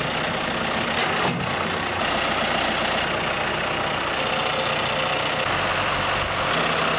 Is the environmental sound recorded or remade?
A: recorded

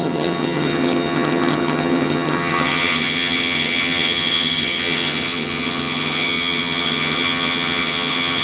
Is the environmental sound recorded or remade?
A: remade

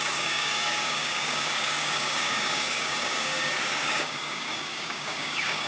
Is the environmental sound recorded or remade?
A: remade